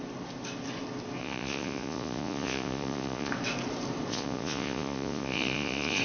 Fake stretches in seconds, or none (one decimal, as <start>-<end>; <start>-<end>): 1.2-3.3; 4.1-6.0